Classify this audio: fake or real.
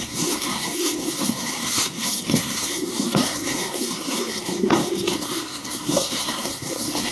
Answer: fake